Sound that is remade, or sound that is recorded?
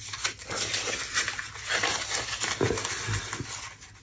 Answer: recorded